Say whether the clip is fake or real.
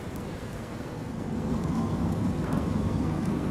fake